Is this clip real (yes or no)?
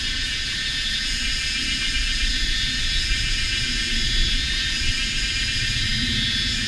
no